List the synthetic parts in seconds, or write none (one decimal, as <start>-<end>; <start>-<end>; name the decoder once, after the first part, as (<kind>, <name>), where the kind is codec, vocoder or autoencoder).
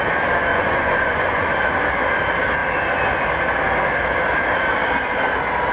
0.5-1.5 (vocoder, Vocos)